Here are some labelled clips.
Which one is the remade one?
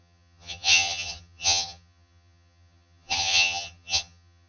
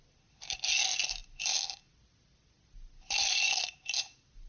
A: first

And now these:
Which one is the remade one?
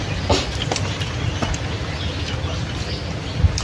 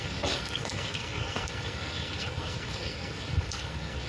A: second